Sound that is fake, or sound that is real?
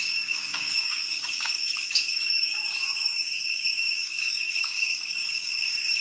fake